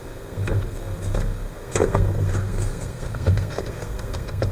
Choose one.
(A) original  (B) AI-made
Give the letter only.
B